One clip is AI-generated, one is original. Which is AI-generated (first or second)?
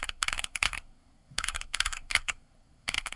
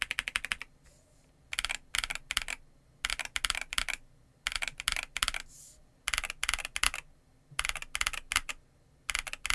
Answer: first